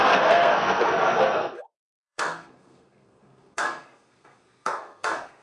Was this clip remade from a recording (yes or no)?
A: yes